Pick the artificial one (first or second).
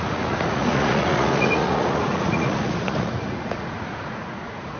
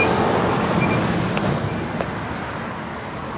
first